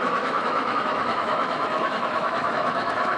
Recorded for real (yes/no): no